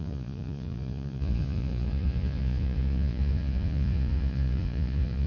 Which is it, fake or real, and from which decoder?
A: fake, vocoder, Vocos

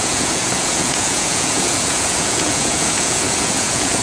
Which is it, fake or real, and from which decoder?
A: fake, vocoder, Vocos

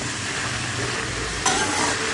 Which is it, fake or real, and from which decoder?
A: real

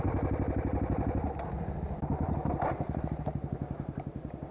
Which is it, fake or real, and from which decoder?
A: real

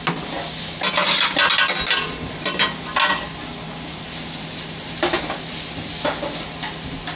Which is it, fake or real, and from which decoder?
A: real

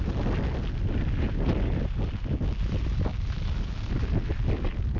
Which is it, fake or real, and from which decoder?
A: real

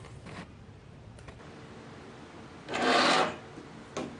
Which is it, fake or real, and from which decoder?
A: real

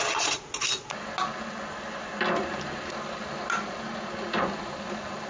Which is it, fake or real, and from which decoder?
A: real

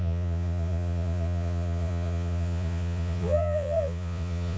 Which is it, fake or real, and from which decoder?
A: fake, vocoder, Vocos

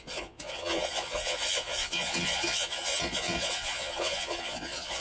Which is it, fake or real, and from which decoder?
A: fake, vocoder, Vocos